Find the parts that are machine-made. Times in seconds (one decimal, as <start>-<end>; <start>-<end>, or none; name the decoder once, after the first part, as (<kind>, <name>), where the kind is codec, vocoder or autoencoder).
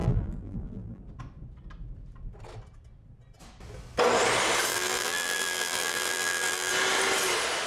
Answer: 0.0-1.0 (vocoder, BigVGAN v2); 4.7-6.7